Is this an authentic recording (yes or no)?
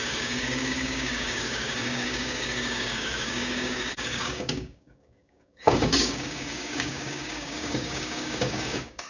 no